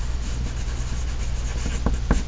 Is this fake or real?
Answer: real